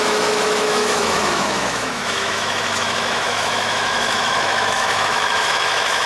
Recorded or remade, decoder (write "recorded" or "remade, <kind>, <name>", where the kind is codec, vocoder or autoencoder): remade, autoencoder, DAC-VAE